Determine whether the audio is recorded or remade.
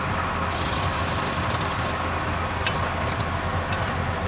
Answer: recorded